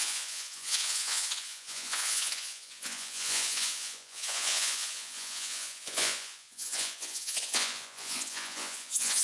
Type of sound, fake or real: fake